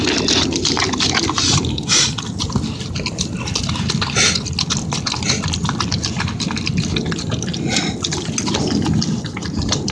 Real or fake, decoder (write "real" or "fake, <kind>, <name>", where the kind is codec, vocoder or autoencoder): real